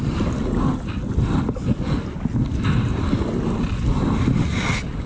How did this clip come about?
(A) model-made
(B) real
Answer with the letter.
B